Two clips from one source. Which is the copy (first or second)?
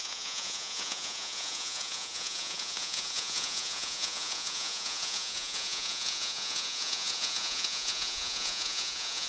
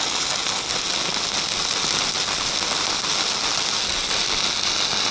first